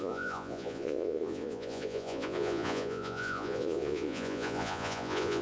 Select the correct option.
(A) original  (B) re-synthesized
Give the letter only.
B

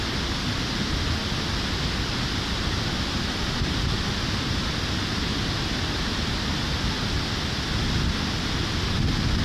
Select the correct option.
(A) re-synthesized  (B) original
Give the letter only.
B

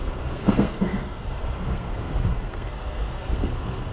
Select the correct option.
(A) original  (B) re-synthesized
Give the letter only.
B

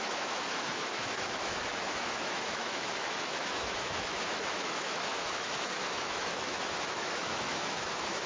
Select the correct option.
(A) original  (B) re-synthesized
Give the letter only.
B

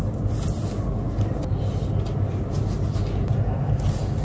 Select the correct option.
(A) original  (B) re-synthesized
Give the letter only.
A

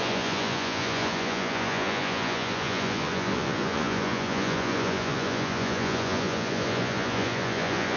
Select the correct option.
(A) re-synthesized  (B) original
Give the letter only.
A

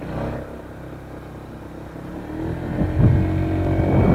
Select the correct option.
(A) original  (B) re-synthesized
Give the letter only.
A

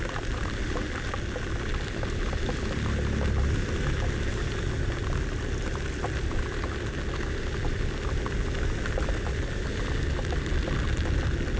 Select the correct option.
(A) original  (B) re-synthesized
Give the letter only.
A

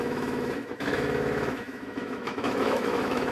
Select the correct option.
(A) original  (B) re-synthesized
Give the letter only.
B